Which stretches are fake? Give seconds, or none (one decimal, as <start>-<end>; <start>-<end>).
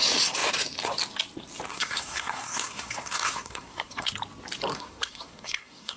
1.7-4.2; 4.7-6.0